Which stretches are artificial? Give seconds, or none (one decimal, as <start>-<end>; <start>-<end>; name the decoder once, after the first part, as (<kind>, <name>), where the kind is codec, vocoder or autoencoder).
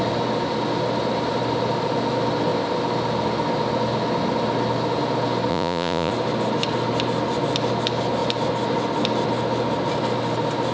5.5-6.1 (vocoder, Vocos)